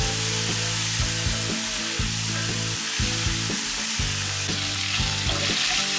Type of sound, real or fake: real